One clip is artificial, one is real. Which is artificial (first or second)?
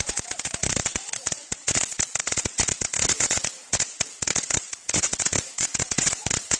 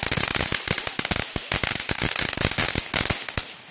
first